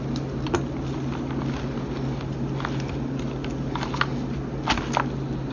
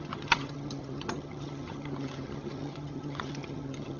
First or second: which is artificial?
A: second